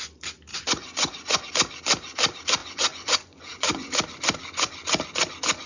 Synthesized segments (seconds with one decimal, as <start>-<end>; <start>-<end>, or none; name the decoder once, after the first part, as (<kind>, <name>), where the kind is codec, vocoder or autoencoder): 0.5-1.5 (vocoder, Vocos); 2.6-3.9

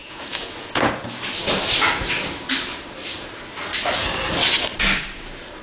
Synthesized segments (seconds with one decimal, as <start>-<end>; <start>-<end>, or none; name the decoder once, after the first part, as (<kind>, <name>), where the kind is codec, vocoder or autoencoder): 0.0-1.0 (vocoder, Vocos)